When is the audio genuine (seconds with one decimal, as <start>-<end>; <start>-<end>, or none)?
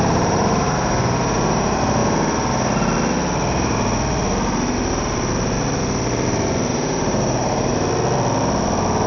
2.0-6.7; 7.7-9.1